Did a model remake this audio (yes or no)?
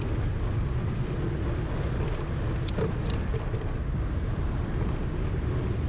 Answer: no